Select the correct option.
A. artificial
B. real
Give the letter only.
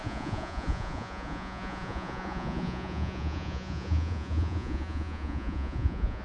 A